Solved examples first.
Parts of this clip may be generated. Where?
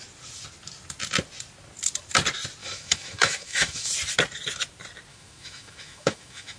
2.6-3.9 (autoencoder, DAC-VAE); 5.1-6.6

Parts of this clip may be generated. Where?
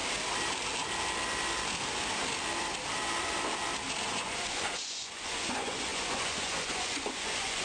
4.1-7.6 (vocoder, Vocos)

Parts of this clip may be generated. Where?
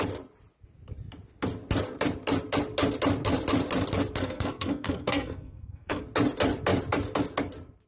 4.2-6.0 (codec, SNAC)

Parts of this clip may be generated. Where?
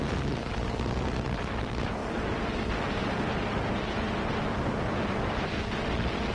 none